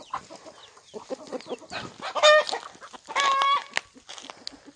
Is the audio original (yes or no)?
yes